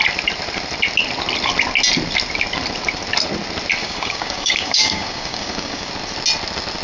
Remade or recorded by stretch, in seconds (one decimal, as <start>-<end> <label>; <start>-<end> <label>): 0.0-3.8 recorded; 3.8-5.9 remade; 5.9-6.8 recorded